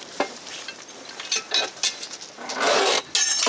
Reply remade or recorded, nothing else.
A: recorded